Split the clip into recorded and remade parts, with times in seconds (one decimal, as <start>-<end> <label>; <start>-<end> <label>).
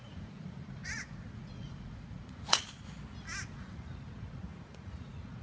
0.0-2.6 remade; 2.6-3.5 recorded; 3.5-5.4 remade